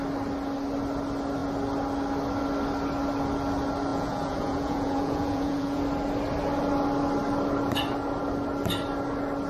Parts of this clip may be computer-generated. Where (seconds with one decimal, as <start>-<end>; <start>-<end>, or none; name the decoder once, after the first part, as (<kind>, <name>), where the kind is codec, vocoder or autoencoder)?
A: 3.9-5.8 (vocoder, Vocos)

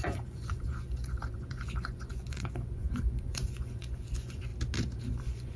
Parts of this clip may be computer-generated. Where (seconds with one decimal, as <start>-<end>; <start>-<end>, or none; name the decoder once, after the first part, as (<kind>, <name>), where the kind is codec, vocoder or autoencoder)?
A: 0.0-4.5 (vocoder, Vocos); 5.0-5.6

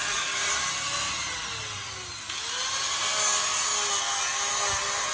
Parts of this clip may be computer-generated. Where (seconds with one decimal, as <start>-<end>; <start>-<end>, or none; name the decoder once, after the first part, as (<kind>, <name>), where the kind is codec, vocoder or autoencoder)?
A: 0.0-0.5 (vocoder, Vocos)